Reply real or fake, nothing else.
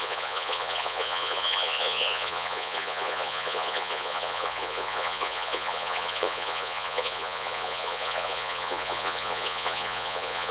fake